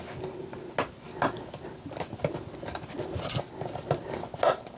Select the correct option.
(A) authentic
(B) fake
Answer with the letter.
A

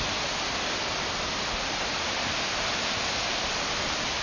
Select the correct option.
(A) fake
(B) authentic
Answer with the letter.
B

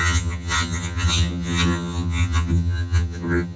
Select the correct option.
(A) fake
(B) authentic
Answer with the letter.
A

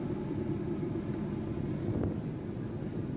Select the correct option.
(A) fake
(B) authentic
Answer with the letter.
B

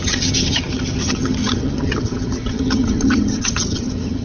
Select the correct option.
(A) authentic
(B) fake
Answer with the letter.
B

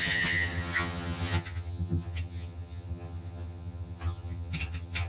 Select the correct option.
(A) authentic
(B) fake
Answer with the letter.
B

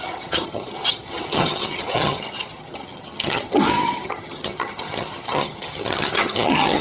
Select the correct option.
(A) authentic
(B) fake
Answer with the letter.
B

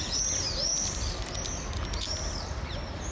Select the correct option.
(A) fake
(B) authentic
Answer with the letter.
B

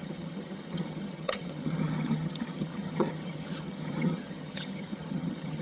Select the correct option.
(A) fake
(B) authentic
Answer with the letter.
A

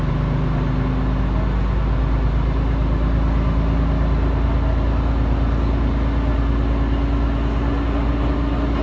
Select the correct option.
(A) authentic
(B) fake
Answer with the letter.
A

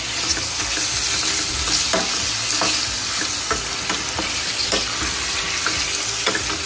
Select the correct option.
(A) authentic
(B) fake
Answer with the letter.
A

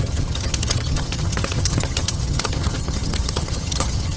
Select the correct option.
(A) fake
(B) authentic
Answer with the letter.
A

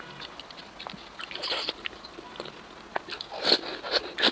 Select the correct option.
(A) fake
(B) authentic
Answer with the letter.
B